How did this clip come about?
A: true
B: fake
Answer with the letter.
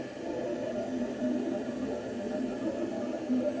A